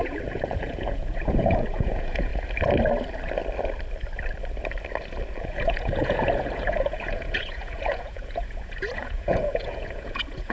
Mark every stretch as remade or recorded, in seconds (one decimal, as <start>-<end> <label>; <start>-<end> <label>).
0.0-2.3 remade; 2.3-5.4 recorded; 5.4-10.5 remade

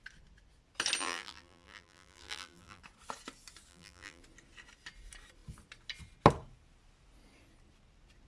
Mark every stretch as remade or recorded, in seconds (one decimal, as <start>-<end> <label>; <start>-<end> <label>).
0.0-1.0 recorded; 1.0-2.8 remade; 2.8-3.7 recorded; 3.7-4.2 remade; 4.2-8.3 recorded

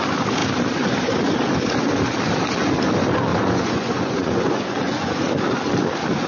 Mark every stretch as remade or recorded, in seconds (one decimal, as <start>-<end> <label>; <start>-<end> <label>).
0.0-3.3 recorded; 3.3-5.2 remade; 5.2-6.3 recorded

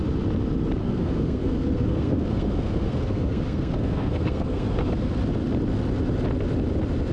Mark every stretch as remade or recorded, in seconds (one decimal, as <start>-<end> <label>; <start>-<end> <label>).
0.0-0.8 recorded; 0.8-5.1 remade; 5.1-7.1 recorded

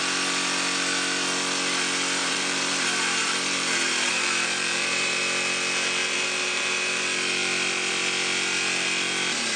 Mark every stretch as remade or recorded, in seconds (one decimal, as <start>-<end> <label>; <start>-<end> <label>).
0.0-2.2 recorded; 2.2-5.2 remade; 5.2-6.0 recorded; 6.0-7.0 remade; 7.0-9.6 recorded

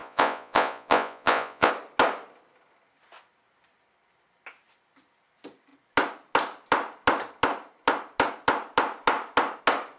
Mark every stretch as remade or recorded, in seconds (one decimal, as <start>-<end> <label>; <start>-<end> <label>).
0.0-1.7 remade; 1.7-10.0 recorded

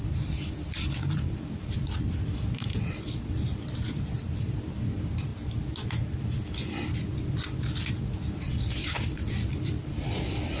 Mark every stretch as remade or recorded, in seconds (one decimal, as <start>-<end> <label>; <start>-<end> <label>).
0.0-5.3 remade; 5.3-8.3 recorded; 8.3-10.6 remade